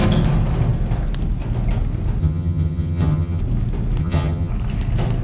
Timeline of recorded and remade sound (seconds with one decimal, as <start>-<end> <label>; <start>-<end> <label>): 0.0-2.2 recorded; 2.2-3.4 remade; 3.4-4.0 recorded; 4.0-4.5 remade; 4.5-5.2 recorded